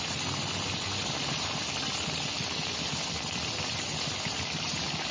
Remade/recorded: recorded